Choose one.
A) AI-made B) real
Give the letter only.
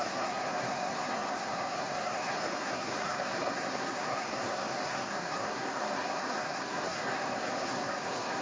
A